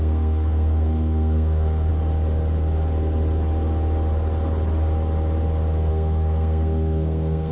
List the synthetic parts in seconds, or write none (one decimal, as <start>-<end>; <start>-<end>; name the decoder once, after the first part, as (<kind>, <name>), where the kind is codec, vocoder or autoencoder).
0.0-1.9 (codec, SNAC); 5.9-7.5